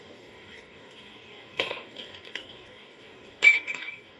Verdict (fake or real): fake